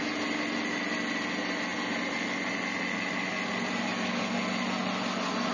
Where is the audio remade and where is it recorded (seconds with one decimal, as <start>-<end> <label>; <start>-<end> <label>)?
0.0-5.5 recorded